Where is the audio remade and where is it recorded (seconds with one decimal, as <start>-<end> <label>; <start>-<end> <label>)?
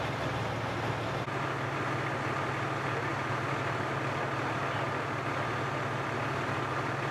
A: 0.0-7.1 recorded